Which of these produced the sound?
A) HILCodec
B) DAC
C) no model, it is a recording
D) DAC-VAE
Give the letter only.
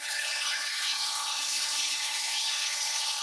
A